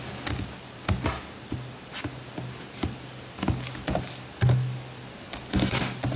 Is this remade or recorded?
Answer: recorded